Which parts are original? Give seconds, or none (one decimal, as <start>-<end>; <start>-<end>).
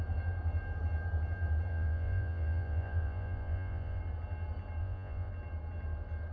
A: 0.0-1.7; 4.0-4.8; 5.3-6.3